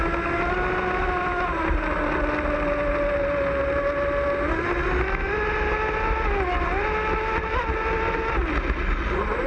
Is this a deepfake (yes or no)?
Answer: no